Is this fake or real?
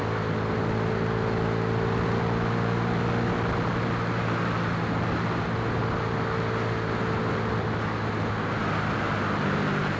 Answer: real